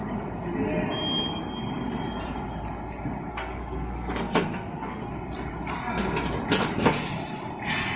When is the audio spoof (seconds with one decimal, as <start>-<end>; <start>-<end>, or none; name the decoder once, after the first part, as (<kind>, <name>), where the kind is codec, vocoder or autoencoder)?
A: 3.3-5.1 (codec, SNAC)